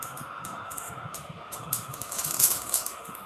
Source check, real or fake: fake